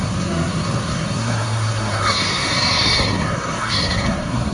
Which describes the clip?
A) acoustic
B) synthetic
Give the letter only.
B